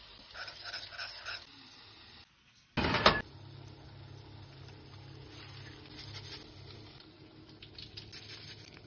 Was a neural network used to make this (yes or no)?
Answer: no